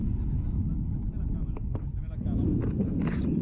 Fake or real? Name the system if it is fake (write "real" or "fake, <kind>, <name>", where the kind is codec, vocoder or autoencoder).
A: real